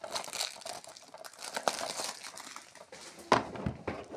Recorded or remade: recorded